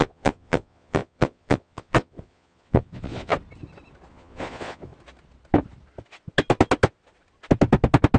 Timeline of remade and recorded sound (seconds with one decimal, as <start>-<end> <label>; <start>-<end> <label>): 0.0-3.3 remade; 3.3-4.1 recorded; 4.1-4.9 remade; 4.9-8.2 recorded